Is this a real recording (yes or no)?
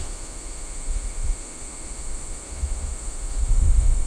no